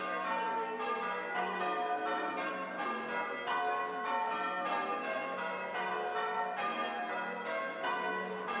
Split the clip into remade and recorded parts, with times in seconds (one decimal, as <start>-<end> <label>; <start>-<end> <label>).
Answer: 0.0-8.6 recorded